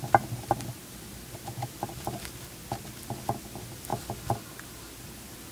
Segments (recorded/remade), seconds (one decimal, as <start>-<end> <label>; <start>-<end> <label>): 0.0-3.9 recorded; 3.9-5.5 remade